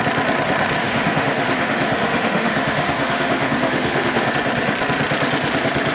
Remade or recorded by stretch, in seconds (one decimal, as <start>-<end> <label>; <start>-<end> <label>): 0.0-0.8 recorded; 0.8-4.3 remade; 4.3-5.9 recorded